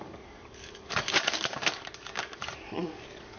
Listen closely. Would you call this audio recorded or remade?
remade